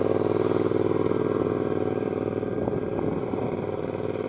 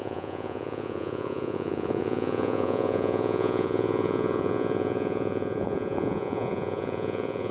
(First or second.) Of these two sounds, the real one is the first